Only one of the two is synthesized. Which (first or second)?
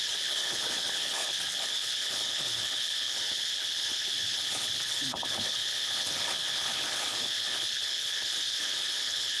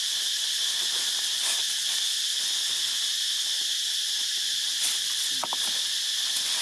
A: first